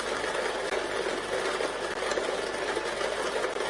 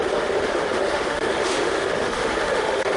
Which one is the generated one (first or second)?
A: second